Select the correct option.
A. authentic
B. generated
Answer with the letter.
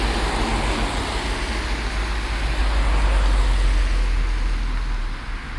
A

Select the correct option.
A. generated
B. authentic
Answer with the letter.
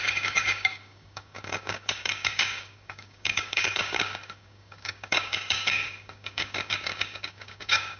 A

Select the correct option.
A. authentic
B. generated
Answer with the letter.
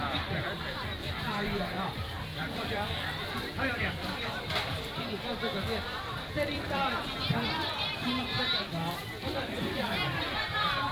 B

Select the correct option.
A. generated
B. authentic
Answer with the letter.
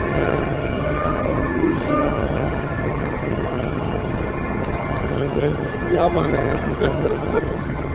A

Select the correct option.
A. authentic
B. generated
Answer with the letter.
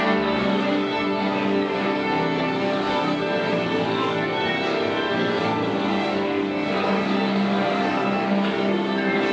B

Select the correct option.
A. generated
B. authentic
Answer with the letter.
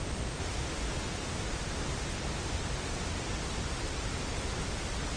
B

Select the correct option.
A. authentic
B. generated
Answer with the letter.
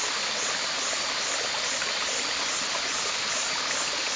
A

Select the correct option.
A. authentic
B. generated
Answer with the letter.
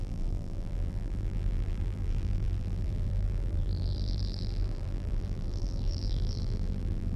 B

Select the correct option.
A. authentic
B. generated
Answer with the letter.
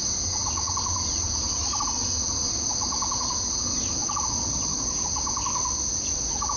A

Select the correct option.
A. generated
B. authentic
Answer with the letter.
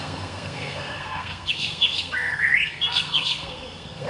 A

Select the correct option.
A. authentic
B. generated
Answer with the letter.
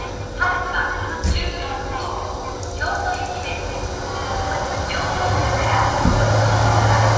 A